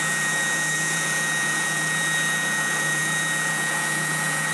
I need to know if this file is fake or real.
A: fake